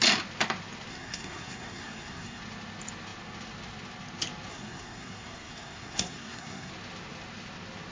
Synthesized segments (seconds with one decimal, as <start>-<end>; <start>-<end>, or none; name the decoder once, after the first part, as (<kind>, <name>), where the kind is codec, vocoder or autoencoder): 0.9-2.4 (codec, SNAC); 4.5-6.7